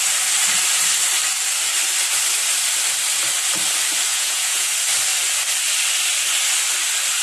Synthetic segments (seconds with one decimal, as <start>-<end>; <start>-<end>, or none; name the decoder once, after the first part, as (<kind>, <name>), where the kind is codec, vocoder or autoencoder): 4.1-4.7 (vocoder, Vocos)